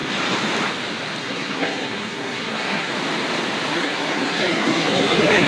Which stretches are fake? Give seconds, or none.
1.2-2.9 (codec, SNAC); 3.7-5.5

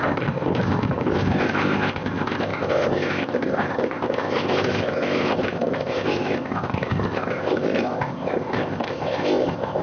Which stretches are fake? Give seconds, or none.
0.0-9.8 (codec, ZipCodec)

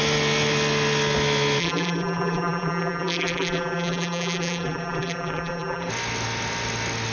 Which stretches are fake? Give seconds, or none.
1.6-5.9 (vocoder, BigVGAN v2)